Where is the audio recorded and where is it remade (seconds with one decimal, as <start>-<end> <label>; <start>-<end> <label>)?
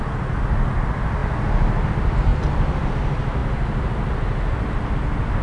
0.0-5.4 recorded